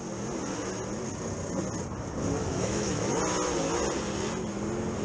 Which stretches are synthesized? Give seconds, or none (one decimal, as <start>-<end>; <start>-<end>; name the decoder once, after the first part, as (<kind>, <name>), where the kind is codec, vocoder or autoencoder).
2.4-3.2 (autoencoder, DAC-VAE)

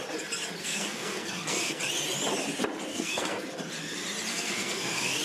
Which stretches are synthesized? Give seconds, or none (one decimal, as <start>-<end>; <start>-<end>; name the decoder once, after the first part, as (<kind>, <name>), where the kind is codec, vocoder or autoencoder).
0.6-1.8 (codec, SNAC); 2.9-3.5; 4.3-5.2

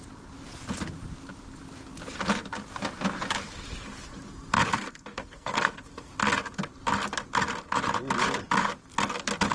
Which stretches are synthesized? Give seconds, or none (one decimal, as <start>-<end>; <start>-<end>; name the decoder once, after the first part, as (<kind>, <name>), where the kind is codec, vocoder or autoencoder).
4.7-6.1 (codec, SNAC)

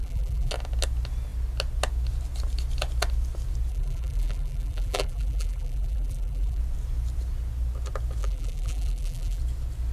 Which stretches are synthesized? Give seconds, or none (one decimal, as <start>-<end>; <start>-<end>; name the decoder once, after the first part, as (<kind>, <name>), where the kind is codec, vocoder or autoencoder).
0.0-0.5 (vocoder, BigVGAN v2); 3.7-6.6; 8.2-9.4

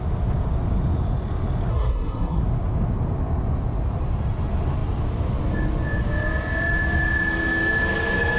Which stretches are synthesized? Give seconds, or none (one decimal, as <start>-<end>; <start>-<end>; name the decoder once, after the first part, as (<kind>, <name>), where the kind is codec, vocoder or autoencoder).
1.7-2.4 (codec, SNAC)

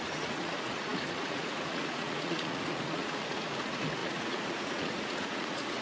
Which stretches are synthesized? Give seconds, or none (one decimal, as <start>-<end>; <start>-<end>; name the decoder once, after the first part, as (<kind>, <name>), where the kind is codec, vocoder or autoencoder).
0.0-5.8 (vocoder, Vocos)